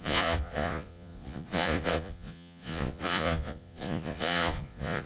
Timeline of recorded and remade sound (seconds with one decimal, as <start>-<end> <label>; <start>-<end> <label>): 0.0-5.1 remade